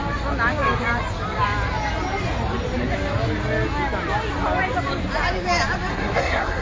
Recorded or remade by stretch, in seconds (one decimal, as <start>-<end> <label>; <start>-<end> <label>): 0.0-5.9 recorded; 5.9-6.6 remade